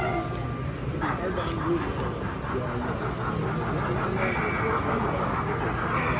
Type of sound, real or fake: real